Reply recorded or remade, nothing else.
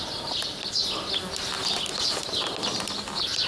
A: recorded